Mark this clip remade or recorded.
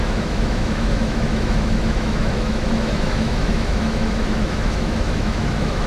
remade